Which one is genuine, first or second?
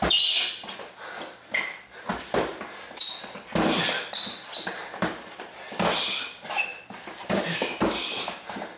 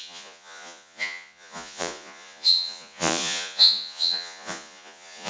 first